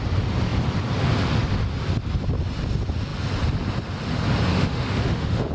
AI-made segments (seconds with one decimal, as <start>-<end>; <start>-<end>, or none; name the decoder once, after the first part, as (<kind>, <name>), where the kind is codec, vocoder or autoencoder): 4.5-5.5 (autoencoder, DAC-VAE)